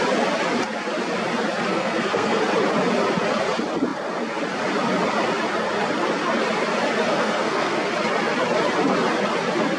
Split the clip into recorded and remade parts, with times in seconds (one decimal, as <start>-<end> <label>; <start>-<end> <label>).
0.0-1.7 recorded; 1.7-2.4 remade; 2.4-7.1 recorded; 7.1-7.9 remade; 7.9-9.8 recorded